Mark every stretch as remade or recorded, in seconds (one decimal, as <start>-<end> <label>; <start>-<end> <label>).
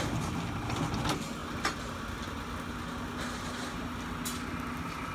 0.0-5.1 recorded